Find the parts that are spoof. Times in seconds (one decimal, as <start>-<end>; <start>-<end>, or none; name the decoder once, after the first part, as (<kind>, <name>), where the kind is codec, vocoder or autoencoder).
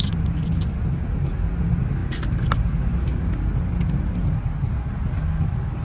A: none